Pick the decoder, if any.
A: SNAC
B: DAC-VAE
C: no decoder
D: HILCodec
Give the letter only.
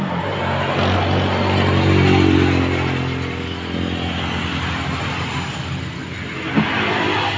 C